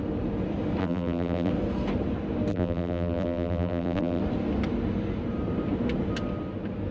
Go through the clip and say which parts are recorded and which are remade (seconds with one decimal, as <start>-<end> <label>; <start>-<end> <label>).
0.0-0.8 recorded; 0.8-1.5 remade; 1.5-2.5 recorded; 2.5-4.2 remade; 4.2-6.9 recorded